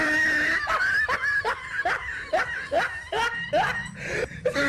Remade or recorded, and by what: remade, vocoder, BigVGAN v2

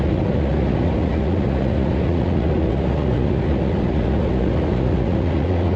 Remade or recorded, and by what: remade, vocoder, Vocos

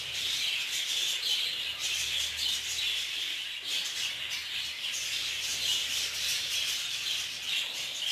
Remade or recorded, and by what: recorded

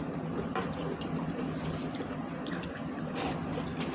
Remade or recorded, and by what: recorded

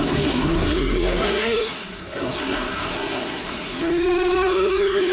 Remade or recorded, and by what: remade, codec, SNAC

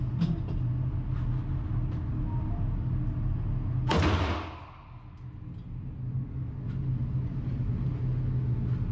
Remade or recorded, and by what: recorded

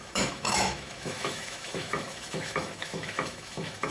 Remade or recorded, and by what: remade, autoencoder, DAC-VAE